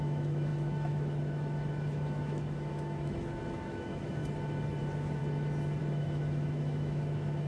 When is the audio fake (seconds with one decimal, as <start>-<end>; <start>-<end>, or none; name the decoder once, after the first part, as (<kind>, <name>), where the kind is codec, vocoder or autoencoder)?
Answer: 0.0-4.2 (autoencoder, DAC-VAE); 4.8-5.2; 5.8-7.5